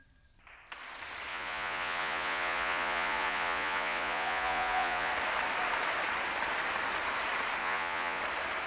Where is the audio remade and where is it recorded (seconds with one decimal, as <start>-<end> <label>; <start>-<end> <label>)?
0.0-1.3 recorded; 1.3-5.1 remade; 5.1-7.6 recorded; 7.6-8.2 remade; 8.2-8.7 recorded